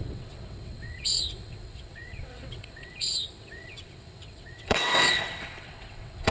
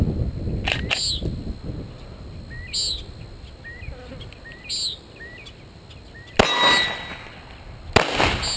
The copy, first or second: first